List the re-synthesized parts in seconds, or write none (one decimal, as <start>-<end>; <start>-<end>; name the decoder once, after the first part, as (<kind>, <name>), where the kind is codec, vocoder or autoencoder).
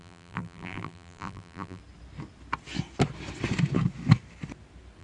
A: 0.0-1.8 (vocoder, BigVGAN v2)